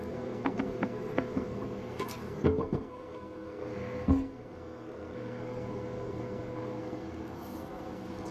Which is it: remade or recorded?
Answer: remade